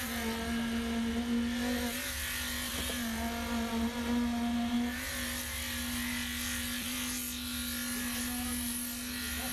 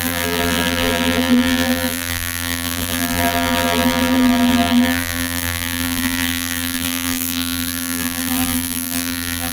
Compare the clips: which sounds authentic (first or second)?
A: first